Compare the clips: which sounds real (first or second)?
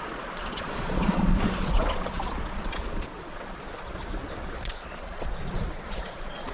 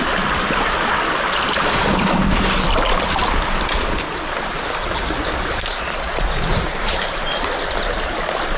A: second